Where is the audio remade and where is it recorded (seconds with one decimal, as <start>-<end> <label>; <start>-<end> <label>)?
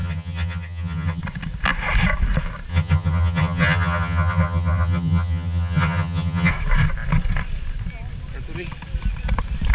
0.0-1.2 remade; 1.2-2.7 recorded; 2.7-6.5 remade; 6.5-9.7 recorded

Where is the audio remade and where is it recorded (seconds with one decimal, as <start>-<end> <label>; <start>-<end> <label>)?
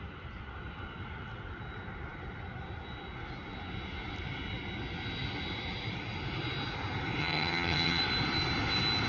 0.0-7.2 recorded; 7.2-8.0 remade; 8.0-9.1 recorded